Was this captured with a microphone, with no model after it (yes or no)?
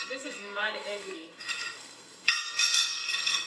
no